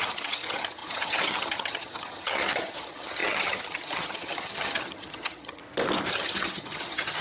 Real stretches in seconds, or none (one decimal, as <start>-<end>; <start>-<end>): 5.6-6.1